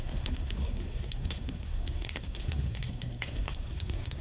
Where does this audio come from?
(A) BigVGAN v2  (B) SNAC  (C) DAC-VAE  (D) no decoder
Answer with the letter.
B